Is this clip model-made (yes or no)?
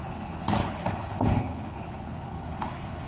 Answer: yes